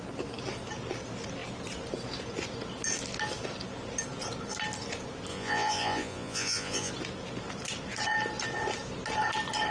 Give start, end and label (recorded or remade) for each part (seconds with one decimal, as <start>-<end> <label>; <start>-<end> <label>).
0.0-5.3 recorded; 5.3-6.9 remade; 6.9-9.7 recorded